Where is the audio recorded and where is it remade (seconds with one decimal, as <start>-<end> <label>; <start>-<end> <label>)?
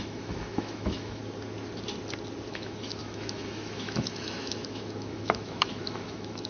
0.0-1.2 remade; 1.2-2.5 recorded; 2.5-6.5 remade